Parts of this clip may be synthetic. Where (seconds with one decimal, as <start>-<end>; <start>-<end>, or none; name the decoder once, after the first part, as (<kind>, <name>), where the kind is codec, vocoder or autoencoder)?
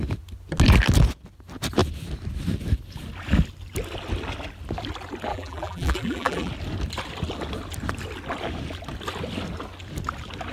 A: 5.3-6.5 (vocoder, BigVGAN v2)